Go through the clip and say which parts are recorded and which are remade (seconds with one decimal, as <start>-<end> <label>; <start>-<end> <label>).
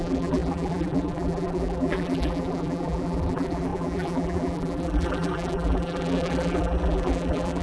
0.0-7.6 remade